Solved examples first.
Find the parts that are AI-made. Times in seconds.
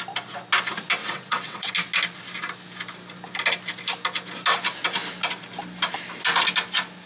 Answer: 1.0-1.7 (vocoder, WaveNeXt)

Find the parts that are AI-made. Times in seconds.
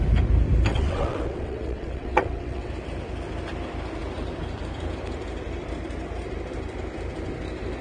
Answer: 0.7-2.7 (vocoder, WaveNeXt)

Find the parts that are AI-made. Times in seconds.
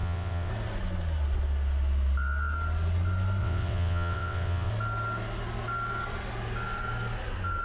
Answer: 0.0-0.5 (vocoder, WaveNeXt); 3.4-4.7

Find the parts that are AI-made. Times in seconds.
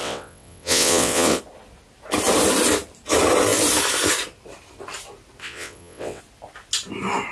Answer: 0.0-1.4 (vocoder, WaveNeXt); 5.4-6.2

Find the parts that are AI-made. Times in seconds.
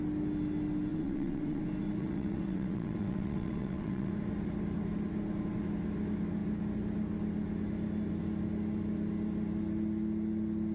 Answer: 0.9-1.6 (vocoder, WaveNeXt); 2.0-4.1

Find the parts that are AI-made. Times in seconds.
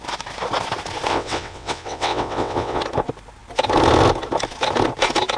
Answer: 1.1-2.8 (vocoder, WaveNeXt)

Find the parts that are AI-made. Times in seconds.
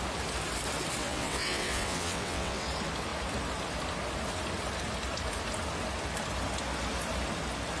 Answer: 1.0-2.7 (vocoder, WaveNeXt)